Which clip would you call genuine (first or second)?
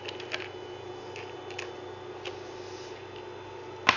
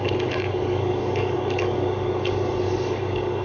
first